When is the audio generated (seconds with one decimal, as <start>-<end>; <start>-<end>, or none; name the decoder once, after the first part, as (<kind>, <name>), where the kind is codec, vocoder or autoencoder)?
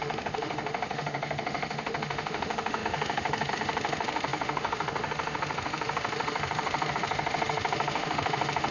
0.0-8.7 (autoencoder, DAC-VAE)